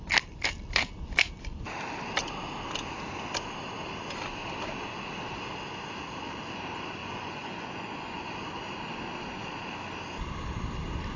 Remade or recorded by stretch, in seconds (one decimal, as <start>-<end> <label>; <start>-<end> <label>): 0.0-7.0 recorded; 7.0-8.2 remade; 8.2-11.2 recorded